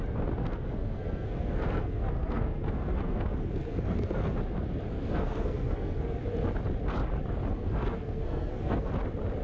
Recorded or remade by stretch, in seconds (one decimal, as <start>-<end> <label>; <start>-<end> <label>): 0.0-0.4 recorded; 0.4-4.4 remade; 4.4-4.9 recorded; 4.9-6.2 remade; 6.2-7.5 recorded; 7.5-8.9 remade; 8.9-9.4 recorded